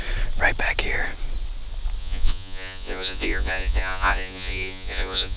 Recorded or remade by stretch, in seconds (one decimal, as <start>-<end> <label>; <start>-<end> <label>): 0.0-2.0 recorded; 2.0-5.4 remade